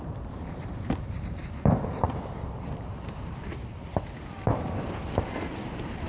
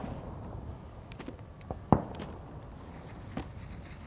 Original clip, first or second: second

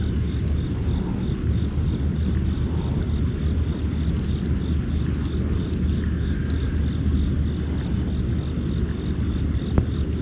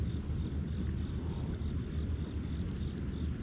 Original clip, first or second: first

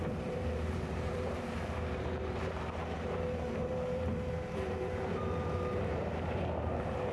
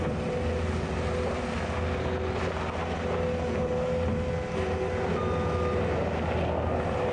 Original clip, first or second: second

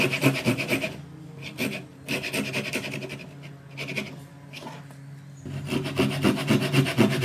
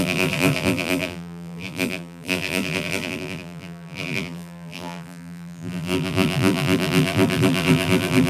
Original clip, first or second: first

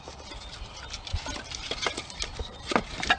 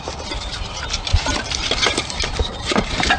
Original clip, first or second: first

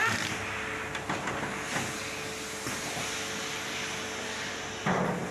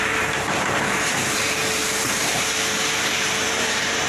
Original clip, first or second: first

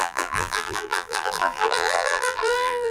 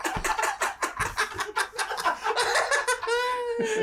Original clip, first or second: second